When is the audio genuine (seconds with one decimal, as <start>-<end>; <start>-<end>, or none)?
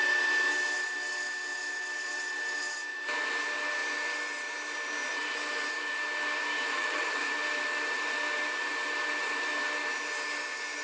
0.0-6.7; 7.3-10.8